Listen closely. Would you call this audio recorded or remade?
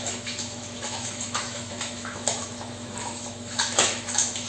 remade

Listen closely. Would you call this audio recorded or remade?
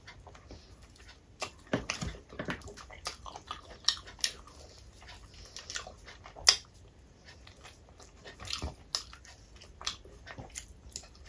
recorded